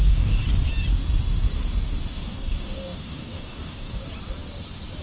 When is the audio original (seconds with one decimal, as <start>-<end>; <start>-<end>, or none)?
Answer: 0.4-2.1; 4.0-5.0